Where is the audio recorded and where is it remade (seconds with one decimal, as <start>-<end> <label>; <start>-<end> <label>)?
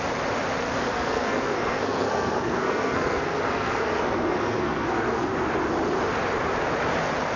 0.0-0.9 recorded; 0.9-5.3 remade; 5.3-7.4 recorded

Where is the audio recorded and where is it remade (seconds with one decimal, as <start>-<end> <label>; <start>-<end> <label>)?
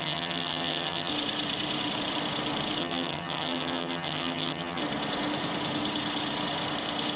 0.0-1.1 remade; 1.1-2.8 recorded; 2.8-4.8 remade; 4.8-7.2 recorded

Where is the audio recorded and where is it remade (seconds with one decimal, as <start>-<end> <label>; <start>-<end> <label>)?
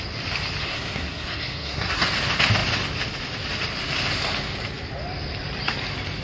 0.0-0.6 recorded; 0.6-2.0 remade; 2.0-6.2 recorded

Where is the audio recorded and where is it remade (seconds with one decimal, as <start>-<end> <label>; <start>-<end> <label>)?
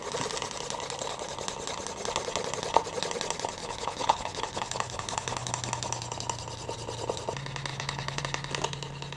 0.0-3.6 recorded; 3.6-5.5 remade; 5.5-7.7 recorded; 7.7-8.2 remade; 8.2-9.2 recorded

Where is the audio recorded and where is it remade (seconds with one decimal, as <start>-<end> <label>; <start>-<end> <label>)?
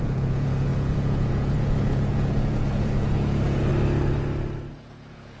0.0-3.7 remade; 3.7-4.7 recorded; 4.7-5.4 remade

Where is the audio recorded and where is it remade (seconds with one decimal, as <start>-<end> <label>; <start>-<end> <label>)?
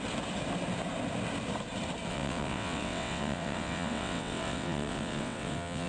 0.0-2.1 recorded; 2.1-5.9 remade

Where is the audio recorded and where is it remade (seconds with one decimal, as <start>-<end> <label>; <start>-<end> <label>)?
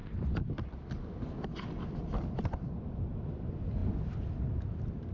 0.0-5.1 recorded